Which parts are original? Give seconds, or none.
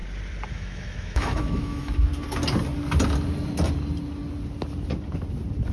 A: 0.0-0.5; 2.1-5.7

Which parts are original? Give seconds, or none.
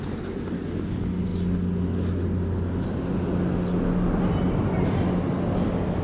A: 0.0-6.0